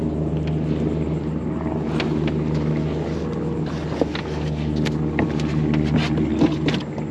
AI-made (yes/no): no